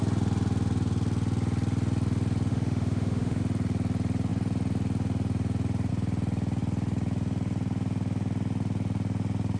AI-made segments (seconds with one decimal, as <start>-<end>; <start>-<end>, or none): 2.5-3.4